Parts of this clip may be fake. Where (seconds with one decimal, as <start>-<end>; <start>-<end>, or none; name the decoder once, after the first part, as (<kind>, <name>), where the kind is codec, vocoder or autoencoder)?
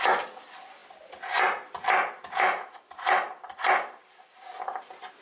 none